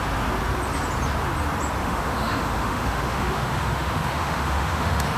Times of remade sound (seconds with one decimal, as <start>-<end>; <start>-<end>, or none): 1.8-5.2